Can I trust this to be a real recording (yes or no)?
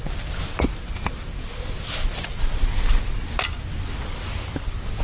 yes